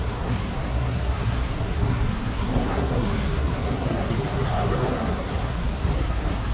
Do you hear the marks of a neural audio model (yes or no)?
yes